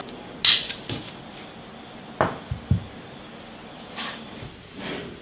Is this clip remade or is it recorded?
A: recorded